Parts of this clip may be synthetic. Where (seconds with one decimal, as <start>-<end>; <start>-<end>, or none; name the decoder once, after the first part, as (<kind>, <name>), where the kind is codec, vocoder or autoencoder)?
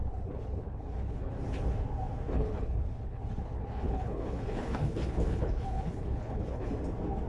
0.0-1.3 (codec, HILCodec); 2.3-6.7